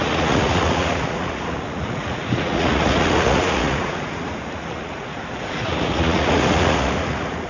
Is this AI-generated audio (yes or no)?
yes